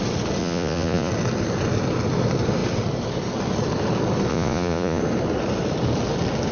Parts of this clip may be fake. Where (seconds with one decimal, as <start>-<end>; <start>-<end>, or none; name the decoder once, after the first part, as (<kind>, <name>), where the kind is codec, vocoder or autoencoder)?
0.4-1.1 (vocoder, Vocos); 4.3-5.0